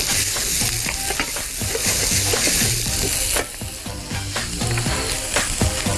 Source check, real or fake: real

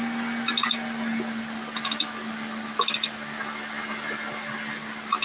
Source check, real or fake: real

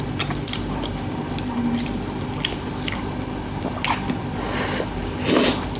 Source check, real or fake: real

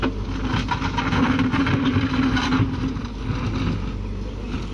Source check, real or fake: real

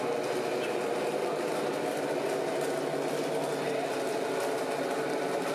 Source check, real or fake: real